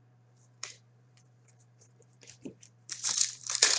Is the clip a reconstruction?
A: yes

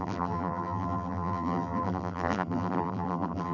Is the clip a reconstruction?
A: yes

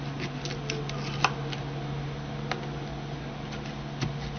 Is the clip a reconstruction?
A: no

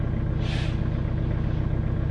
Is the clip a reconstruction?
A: no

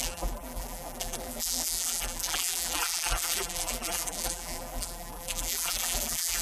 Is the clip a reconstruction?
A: yes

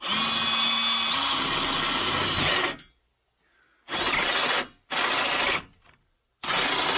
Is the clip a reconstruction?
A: no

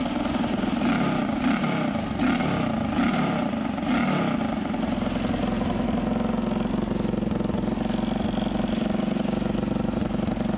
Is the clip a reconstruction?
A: no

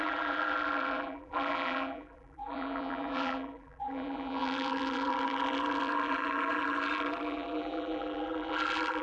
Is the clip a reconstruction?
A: yes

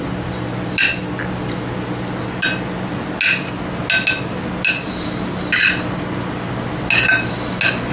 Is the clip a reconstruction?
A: no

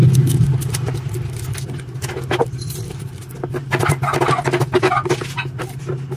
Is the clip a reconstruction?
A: no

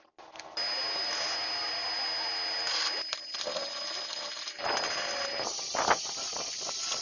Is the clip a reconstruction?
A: no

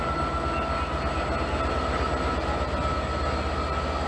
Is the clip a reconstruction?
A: no